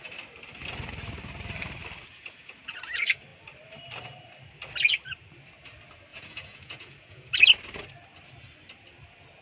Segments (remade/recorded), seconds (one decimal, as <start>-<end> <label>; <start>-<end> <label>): 0.0-2.1 recorded; 2.1-2.6 remade; 2.6-6.1 recorded; 6.1-7.3 remade; 7.3-9.4 recorded